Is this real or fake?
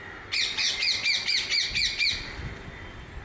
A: real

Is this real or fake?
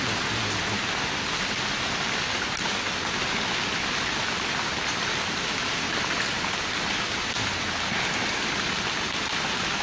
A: real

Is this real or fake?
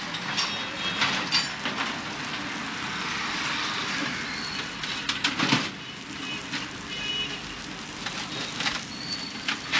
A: real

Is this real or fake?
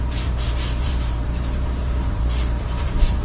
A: fake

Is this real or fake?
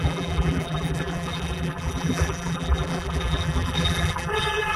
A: fake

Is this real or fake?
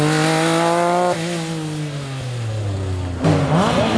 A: real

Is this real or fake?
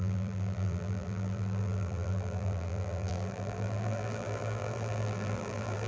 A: fake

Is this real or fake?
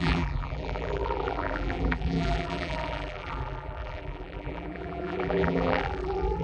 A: fake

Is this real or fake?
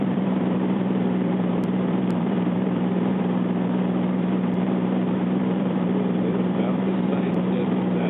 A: fake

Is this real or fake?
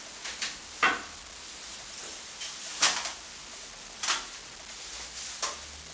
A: real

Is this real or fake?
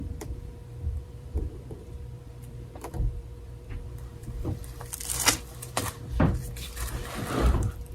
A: fake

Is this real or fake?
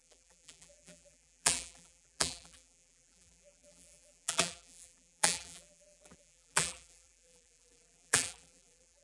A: fake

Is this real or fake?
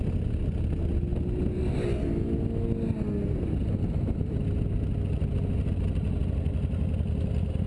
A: real